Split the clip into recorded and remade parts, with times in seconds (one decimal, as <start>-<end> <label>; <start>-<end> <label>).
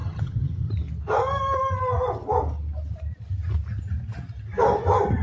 0.0-0.7 remade; 0.7-5.2 recorded